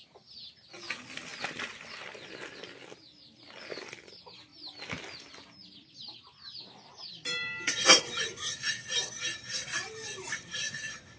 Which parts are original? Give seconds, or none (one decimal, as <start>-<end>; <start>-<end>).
1.3-3.6; 4.5-7.1